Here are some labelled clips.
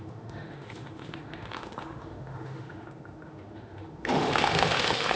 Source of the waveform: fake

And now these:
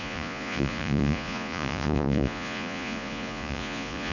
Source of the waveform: fake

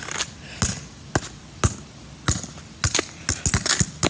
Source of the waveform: real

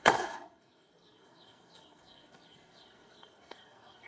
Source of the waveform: fake